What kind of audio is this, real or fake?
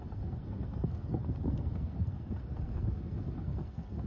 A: fake